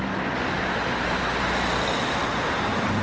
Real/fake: real